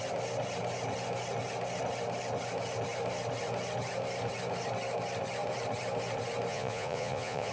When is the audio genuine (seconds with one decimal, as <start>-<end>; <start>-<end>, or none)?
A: 0.0-6.5